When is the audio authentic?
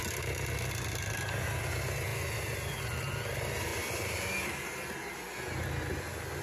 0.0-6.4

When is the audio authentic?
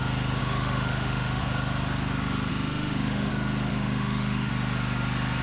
0.0-0.4; 1.4-2.5; 3.3-3.7; 4.5-5.4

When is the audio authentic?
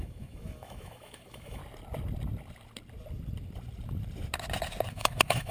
1.6-4.9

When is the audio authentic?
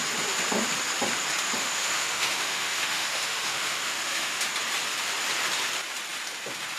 0.0-1.6; 4.4-6.8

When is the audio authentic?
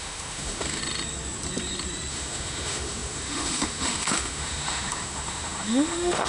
0.8-2.1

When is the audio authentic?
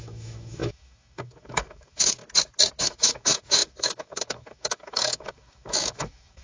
2.2-2.8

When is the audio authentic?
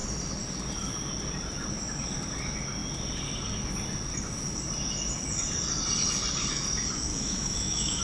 0.0-7.1